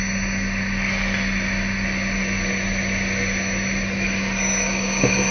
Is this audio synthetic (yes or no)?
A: no